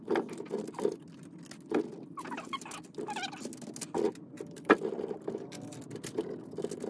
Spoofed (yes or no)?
no